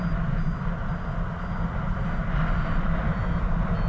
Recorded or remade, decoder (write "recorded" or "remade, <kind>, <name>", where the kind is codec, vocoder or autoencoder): recorded